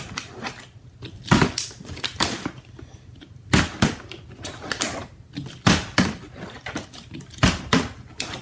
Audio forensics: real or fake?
real